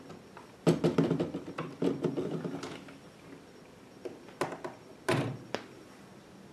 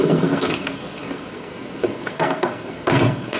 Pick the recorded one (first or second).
first